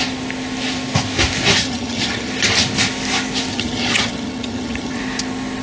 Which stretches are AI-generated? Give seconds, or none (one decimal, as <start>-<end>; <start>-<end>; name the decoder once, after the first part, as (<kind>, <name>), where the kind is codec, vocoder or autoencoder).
1.6-2.3 (vocoder, HiFi-GAN); 3.5-5.0